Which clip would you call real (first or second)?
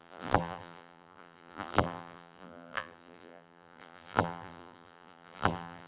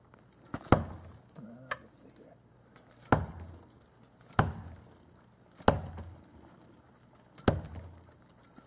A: second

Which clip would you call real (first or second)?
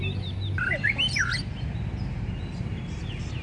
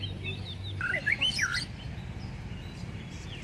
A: first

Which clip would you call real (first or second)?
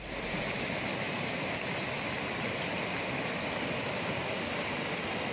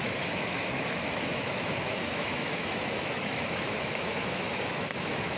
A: first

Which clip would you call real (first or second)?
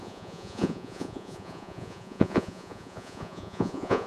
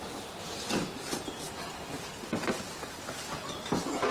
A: second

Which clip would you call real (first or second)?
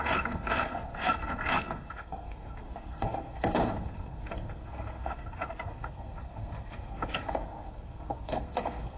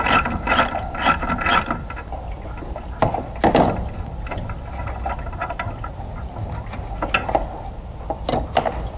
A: second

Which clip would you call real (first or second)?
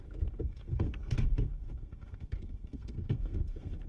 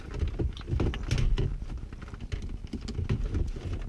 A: second